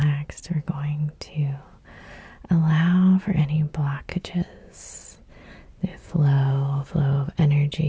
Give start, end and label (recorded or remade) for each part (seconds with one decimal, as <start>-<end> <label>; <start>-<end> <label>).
0.0-4.1 recorded; 4.1-4.8 remade; 4.8-5.9 recorded; 5.9-6.9 remade; 6.9-7.9 recorded

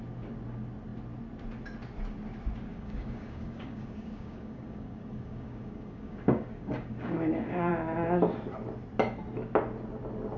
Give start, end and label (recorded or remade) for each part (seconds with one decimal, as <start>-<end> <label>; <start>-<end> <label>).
0.0-2.7 recorded; 2.7-7.7 remade; 7.7-10.4 recorded

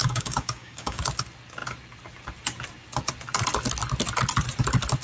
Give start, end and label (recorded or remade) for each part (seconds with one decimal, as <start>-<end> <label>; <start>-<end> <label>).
0.0-1.0 remade; 1.0-5.0 recorded

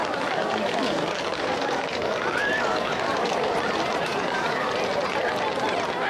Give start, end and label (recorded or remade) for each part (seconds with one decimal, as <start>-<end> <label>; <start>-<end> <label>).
0.0-3.5 remade; 3.5-4.1 recorded; 4.1-4.7 remade; 4.7-6.1 recorded

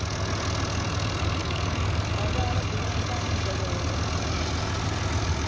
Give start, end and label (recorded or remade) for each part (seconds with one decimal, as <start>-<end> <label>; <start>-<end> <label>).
0.0-1.4 recorded; 1.4-2.1 remade; 2.1-5.5 recorded

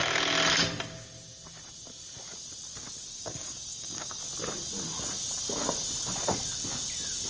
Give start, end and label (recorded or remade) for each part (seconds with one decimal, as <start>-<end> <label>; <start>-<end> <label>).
0.0-3.1 recorded; 3.1-4.2 remade; 4.2-7.3 recorded